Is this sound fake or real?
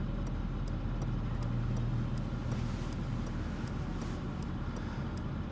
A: real